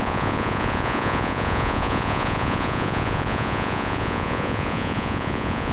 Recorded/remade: remade